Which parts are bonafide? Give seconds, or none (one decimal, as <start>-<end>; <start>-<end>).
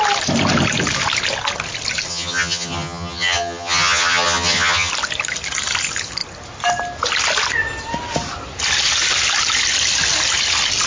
0.0-2.1; 4.9-10.9